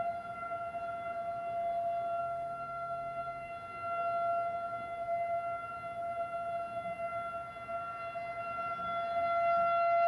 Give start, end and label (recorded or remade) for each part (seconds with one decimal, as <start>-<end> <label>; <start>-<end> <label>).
0.0-2.2 recorded; 2.2-3.5 remade; 3.5-10.1 recorded